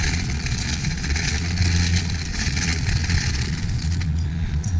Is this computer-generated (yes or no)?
yes